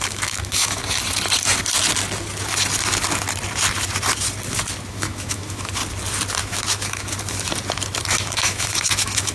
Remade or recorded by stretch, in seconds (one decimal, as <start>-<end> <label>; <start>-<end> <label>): 0.0-0.8 remade; 0.8-4.9 recorded; 4.9-5.8 remade; 5.8-6.4 recorded; 6.4-7.5 remade; 7.5-8.0 recorded; 8.0-9.3 remade